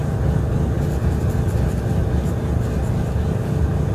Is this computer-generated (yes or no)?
no